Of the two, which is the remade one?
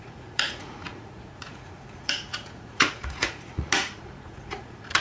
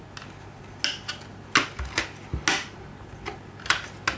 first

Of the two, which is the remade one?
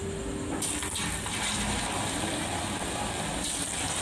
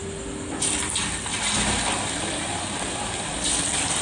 second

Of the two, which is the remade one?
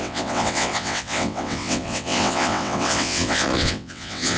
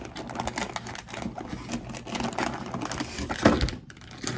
first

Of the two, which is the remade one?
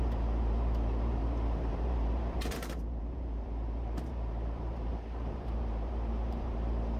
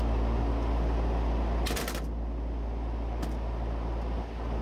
first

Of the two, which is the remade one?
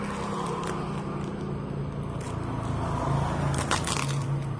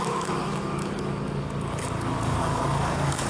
second